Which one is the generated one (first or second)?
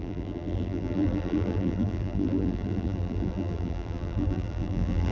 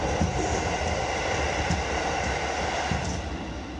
first